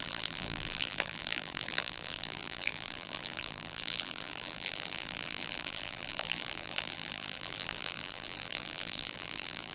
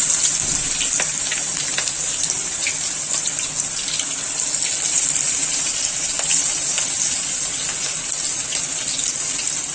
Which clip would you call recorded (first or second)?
second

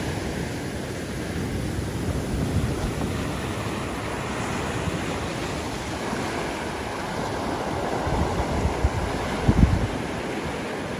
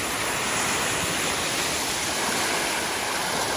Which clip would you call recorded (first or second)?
first